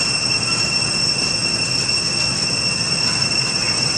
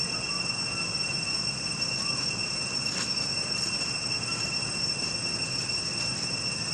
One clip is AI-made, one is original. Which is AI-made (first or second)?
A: second